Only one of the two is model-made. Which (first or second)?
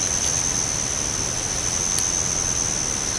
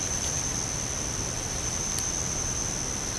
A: second